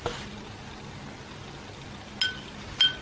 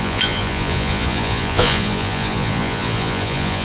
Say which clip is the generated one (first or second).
second